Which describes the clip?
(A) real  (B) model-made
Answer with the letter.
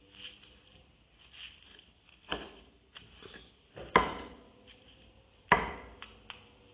A